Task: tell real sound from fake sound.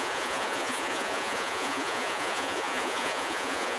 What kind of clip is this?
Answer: fake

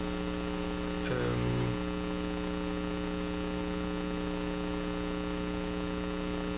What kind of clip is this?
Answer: real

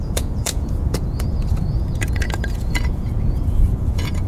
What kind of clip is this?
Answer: fake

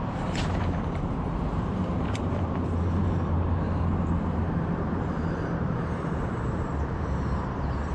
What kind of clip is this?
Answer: fake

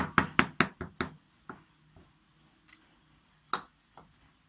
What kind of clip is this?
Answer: real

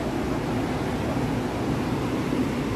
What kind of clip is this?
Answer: real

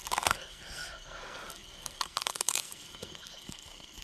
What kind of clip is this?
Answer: fake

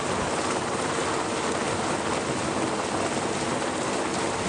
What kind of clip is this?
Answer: real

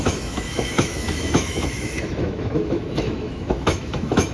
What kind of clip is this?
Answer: fake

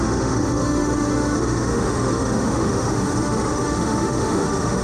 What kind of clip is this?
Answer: fake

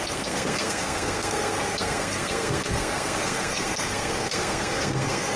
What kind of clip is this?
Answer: fake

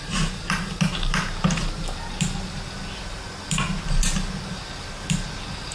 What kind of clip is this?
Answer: real